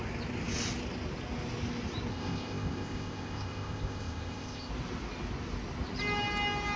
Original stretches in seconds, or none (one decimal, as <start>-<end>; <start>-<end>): 0.0-2.1; 4.7-6.8